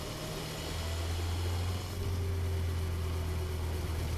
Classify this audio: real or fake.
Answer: real